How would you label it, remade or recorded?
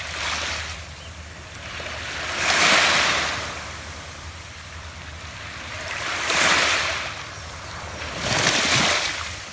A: remade